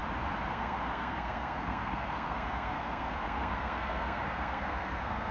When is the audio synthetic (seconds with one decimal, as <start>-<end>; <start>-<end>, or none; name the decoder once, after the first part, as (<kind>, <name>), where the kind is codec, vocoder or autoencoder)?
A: 0.5-5.3 (codec, SNAC)